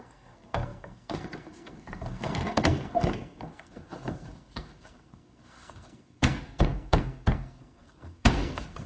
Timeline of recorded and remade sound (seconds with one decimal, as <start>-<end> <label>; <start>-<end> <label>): 0.0-8.9 remade